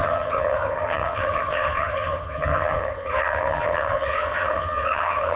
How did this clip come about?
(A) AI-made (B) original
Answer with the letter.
A